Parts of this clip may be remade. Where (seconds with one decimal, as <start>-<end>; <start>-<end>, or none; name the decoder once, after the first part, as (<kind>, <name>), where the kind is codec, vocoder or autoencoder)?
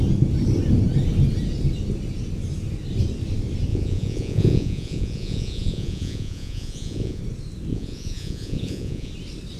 3.7-7.2 (vocoder, Vocos); 7.7-9.1